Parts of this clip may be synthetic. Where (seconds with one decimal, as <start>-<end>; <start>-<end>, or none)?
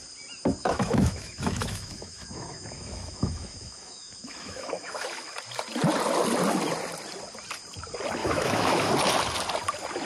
0.6-5.3; 8.2-8.9